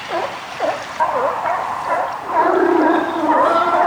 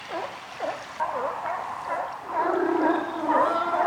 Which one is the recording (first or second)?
second